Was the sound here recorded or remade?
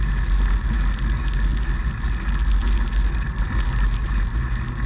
recorded